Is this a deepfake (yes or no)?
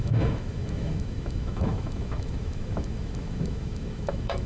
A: yes